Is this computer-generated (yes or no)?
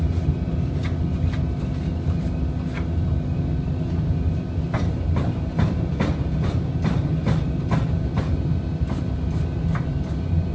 no